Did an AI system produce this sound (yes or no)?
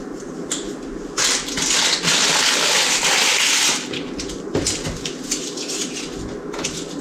no